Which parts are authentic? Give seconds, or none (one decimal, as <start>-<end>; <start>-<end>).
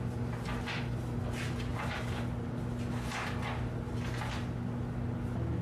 0.0-1.7; 2.2-5.6